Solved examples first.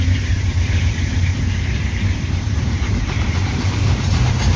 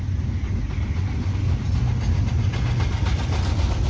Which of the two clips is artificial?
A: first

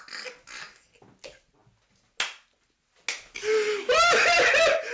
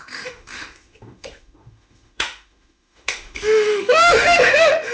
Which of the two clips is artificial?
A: second